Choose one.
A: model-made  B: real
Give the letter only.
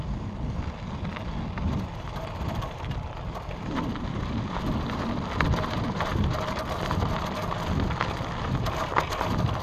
B